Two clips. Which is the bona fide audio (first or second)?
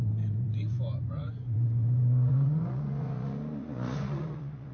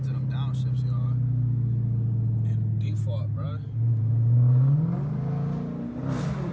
second